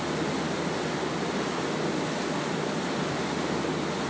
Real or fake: real